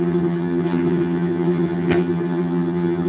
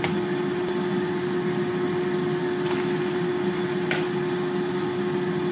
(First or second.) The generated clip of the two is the first